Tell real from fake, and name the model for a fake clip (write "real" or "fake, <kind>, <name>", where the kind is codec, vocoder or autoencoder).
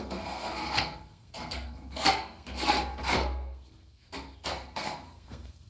fake, codec, SNAC